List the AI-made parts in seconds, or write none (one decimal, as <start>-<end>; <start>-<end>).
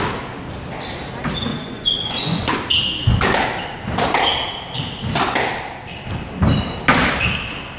1.5-2.6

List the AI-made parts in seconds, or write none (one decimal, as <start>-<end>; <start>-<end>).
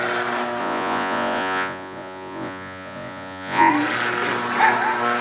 0.6-3.7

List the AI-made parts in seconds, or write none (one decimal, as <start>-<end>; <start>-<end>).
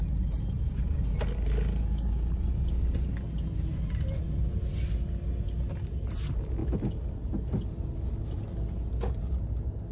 none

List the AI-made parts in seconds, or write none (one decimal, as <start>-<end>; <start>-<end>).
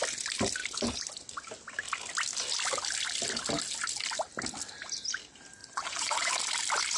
5.6-6.3